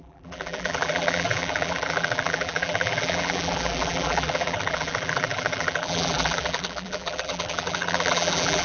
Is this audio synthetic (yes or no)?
yes